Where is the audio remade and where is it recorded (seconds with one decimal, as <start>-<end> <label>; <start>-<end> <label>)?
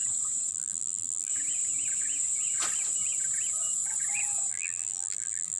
0.0-0.5 recorded; 0.5-1.3 remade; 1.3-4.5 recorded; 4.5-5.6 remade